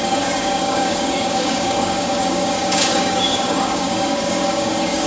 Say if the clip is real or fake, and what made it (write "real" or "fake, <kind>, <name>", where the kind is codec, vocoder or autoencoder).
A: fake, codec, DAC